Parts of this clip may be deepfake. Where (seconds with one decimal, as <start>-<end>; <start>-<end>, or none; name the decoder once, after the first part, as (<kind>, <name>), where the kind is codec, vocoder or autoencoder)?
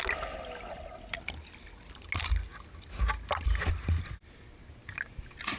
none